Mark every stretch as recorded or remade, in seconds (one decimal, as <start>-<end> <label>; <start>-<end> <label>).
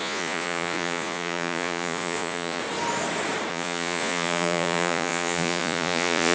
0.0-2.6 remade; 2.6-3.5 recorded; 3.5-6.3 remade